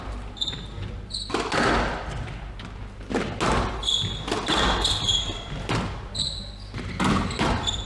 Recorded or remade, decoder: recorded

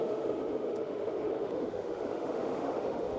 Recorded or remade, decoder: remade, autoencoder, DAC-VAE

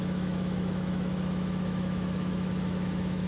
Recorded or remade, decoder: remade, autoencoder, DAC-VAE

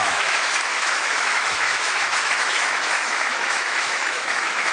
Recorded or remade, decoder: remade, autoencoder, DAC-VAE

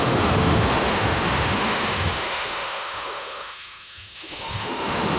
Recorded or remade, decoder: remade, autoencoder, DAC-VAE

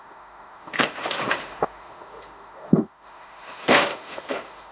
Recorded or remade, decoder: remade, autoencoder, DAC-VAE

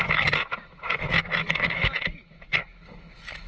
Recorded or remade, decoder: remade, autoencoder, DAC-VAE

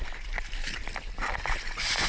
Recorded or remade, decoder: recorded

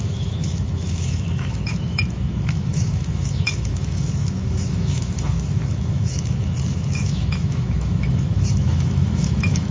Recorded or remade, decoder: remade, autoencoder, DAC-VAE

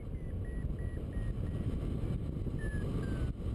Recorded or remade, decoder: recorded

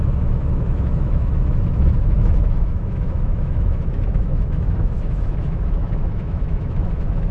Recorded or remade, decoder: remade, autoencoder, DAC-VAE